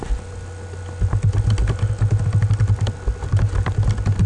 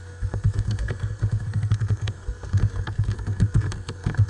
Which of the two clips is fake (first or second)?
second